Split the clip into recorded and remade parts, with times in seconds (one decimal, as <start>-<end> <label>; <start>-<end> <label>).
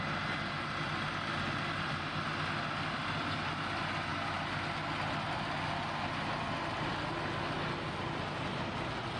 0.0-9.2 recorded